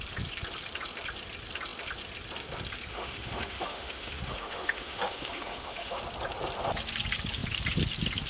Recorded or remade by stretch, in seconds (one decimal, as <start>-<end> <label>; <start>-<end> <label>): 0.0-2.9 recorded; 2.9-6.0 remade; 6.0-8.3 recorded